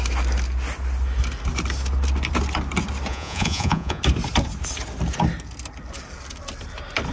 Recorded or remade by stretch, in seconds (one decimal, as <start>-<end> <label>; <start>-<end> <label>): 0.0-3.1 recorded; 3.1-4.0 remade; 4.0-7.1 recorded